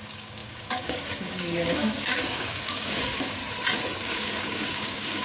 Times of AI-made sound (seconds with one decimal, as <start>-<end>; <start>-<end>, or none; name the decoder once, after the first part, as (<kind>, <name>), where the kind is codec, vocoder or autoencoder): 0.0-3.4 (codec, DAC); 4.0-5.2